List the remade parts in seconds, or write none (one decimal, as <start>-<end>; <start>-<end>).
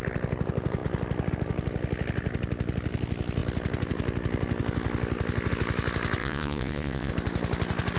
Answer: 6.2-7.1